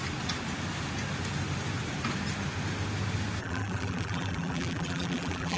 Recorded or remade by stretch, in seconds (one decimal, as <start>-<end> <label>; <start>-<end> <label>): 0.0-3.4 recorded; 3.4-5.6 remade